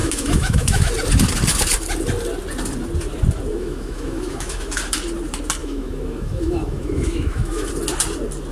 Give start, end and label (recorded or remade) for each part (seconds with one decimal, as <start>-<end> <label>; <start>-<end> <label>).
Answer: 0.0-0.9 remade; 0.9-3.5 recorded; 3.5-4.8 remade; 4.8-5.6 recorded; 5.6-7.7 remade; 7.7-8.5 recorded